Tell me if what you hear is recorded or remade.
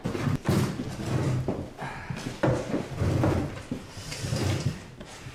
recorded